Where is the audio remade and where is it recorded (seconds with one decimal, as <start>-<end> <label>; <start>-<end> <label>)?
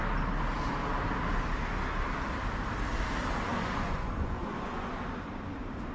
0.0-3.5 recorded; 3.5-4.9 remade; 4.9-5.9 recorded